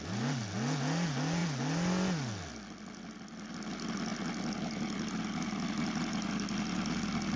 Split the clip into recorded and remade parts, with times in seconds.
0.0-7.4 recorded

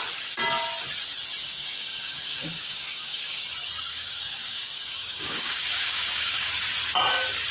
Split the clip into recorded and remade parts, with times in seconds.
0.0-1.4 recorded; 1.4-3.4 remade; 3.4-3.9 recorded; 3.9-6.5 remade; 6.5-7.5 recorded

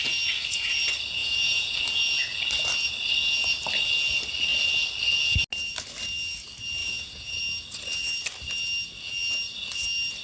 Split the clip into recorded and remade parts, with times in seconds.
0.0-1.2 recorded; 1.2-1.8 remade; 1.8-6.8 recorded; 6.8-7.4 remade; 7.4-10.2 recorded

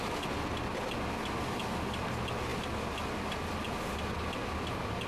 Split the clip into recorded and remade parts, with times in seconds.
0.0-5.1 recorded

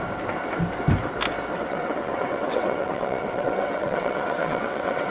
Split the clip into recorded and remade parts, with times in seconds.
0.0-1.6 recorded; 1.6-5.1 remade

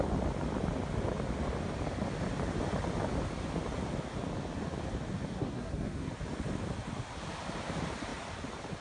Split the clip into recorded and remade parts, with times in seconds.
0.0-5.4 recorded; 5.4-6.1 remade; 6.1-8.8 recorded